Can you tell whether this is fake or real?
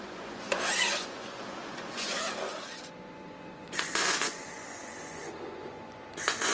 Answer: fake